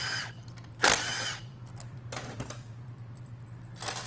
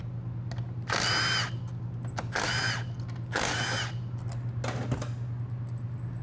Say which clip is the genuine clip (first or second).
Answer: second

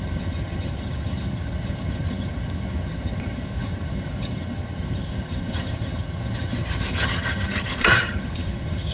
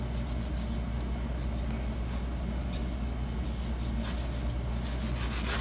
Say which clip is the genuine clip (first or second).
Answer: second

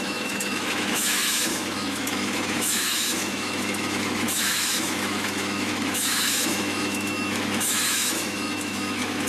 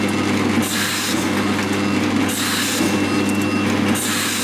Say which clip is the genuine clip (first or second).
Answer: second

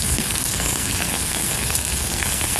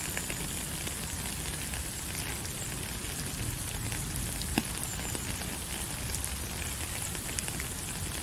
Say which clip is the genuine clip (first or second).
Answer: second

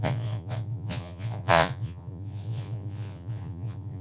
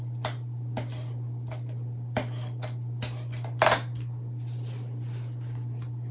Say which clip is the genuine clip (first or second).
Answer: second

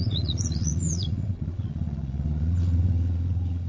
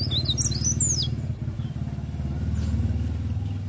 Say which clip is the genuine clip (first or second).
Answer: second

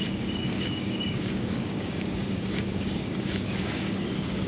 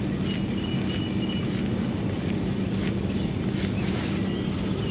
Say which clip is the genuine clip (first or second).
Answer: second